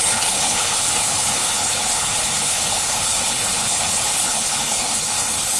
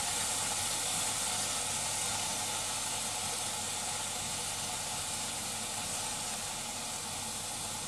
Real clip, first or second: second